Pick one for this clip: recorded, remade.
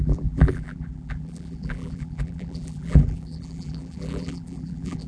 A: remade